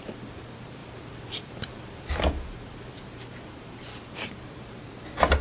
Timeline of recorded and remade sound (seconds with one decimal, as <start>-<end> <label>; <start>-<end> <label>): 0.0-0.8 recorded; 0.8-2.2 remade; 2.2-3.9 recorded; 3.9-4.7 remade; 4.7-5.4 recorded